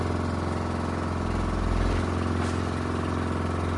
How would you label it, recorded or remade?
recorded